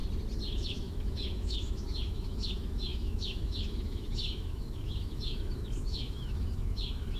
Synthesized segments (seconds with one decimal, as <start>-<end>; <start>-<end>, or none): 0.5-7.2